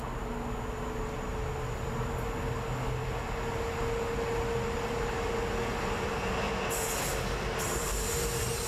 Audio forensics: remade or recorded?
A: recorded